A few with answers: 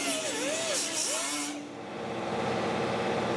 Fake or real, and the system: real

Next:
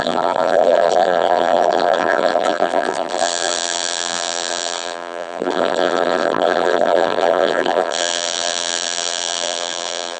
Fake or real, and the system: fake, vocoder, BigVGAN v2